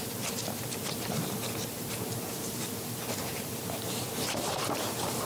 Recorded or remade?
remade